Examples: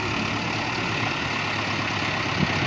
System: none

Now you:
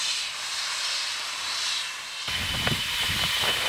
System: none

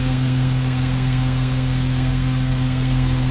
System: codec, SNAC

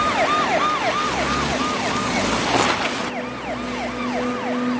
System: none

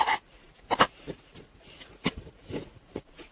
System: vocoder, Vocos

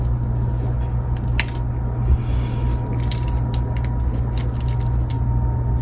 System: none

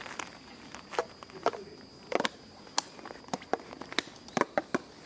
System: none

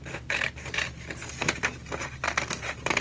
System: none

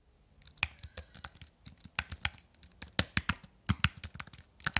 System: none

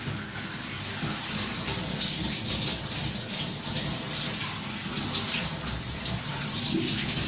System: none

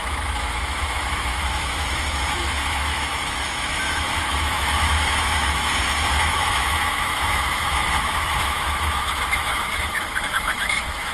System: autoencoder, DAC-VAE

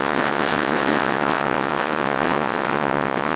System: vocoder, WaveNeXt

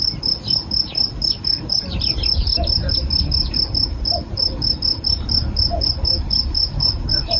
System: none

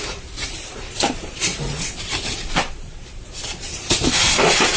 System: vocoder, BigVGAN v2